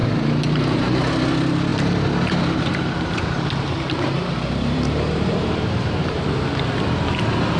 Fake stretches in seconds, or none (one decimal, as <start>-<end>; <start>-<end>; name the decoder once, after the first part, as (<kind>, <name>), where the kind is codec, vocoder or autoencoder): 0.0-1.1 (vocoder, BigVGAN v2); 1.7-6.3